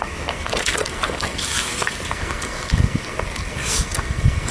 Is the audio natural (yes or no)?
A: no